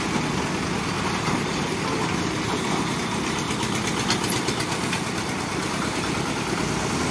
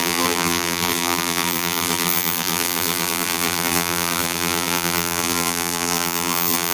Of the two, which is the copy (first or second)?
second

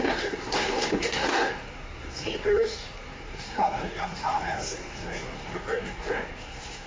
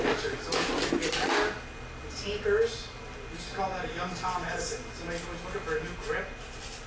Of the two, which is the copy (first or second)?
first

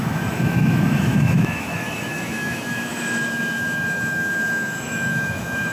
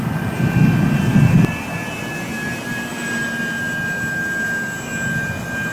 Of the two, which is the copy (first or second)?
first